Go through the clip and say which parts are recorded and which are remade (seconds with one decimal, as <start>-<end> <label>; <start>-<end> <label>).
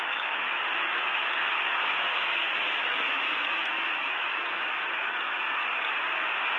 0.0-5.6 remade; 5.6-6.6 recorded